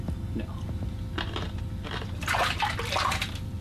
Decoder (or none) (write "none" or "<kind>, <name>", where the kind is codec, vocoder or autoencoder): none